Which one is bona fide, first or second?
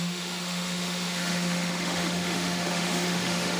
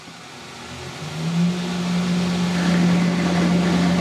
second